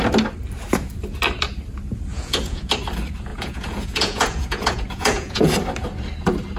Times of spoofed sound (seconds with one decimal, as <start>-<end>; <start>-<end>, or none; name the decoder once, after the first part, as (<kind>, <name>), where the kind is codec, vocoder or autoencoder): 2.1-2.7 (vocoder, Vocos); 3.3-5.5